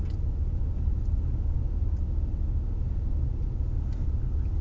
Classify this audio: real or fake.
real